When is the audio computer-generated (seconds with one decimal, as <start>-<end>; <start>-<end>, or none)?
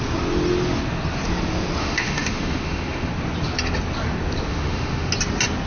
1.8-3.1; 4.5-5.1